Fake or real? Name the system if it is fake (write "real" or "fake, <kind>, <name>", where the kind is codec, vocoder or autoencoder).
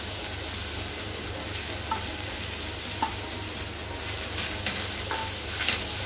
real